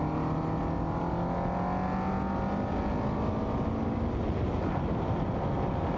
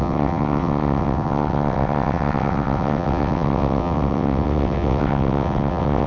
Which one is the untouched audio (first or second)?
first